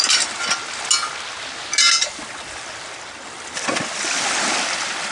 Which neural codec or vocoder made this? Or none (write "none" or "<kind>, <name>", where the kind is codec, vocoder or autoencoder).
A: none